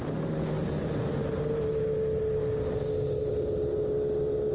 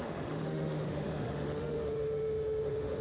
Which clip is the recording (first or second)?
first